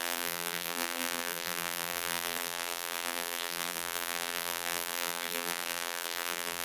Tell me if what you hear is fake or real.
fake